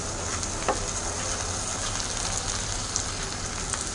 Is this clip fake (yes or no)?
no